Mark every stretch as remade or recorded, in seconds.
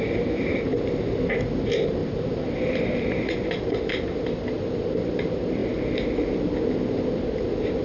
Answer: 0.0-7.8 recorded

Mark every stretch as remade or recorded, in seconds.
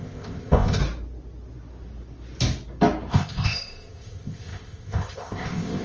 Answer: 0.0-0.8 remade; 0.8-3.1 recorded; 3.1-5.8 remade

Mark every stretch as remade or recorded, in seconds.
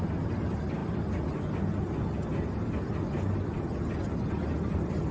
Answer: 0.0-5.1 recorded